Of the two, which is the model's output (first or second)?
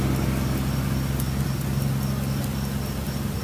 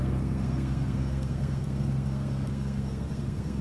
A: second